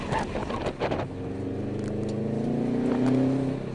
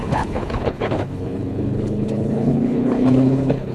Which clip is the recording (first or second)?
first